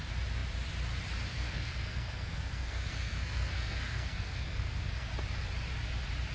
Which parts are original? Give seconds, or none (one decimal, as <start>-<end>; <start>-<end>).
0.0-1.3; 5.1-6.3